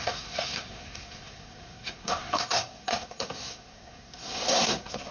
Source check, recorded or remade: remade